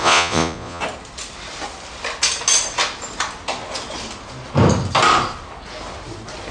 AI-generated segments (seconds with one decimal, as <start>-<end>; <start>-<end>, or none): 0.0-0.8